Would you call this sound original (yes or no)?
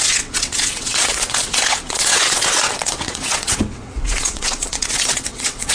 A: no